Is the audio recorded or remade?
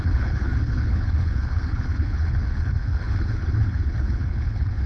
remade